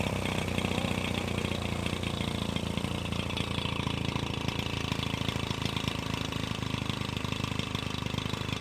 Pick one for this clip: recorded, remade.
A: recorded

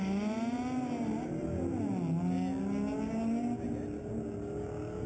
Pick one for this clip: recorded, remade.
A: recorded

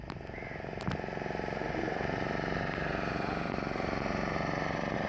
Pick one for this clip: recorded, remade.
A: remade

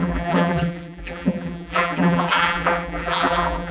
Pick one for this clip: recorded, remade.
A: remade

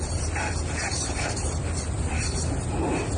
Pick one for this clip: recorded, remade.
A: remade